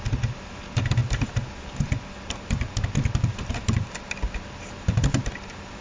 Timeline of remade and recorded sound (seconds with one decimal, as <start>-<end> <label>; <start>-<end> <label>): 0.0-5.8 recorded